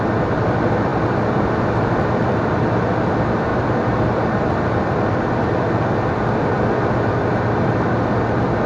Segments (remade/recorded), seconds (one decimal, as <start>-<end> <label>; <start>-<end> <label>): 0.0-8.7 remade